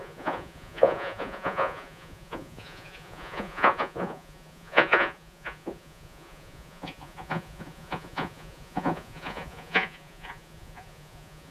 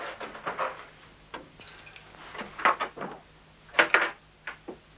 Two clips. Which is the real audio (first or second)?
second